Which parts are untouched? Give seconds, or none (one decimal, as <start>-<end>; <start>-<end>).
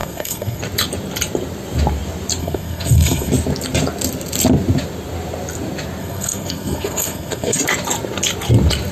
0.6-2.4; 3.3-6.0; 7.6-8.9